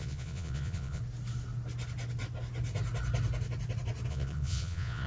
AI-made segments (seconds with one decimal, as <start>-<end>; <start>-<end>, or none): 0.0-1.0; 4.1-5.1